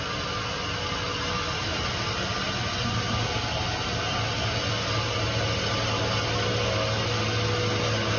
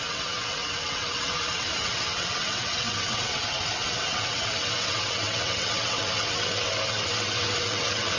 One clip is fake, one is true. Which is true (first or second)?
first